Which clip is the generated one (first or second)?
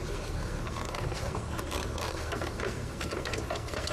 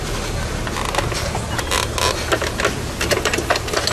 first